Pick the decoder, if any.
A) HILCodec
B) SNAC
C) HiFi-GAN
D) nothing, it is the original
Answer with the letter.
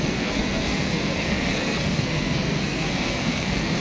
B